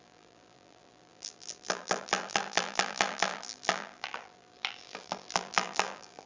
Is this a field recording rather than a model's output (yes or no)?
no